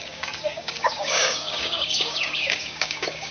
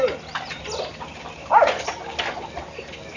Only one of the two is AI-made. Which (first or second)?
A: first